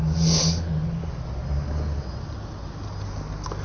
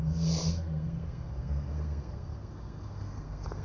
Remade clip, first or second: second